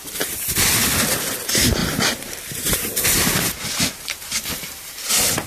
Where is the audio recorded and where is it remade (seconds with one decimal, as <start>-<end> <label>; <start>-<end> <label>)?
0.0-1.8 recorded; 1.8-5.1 remade; 5.1-5.5 recorded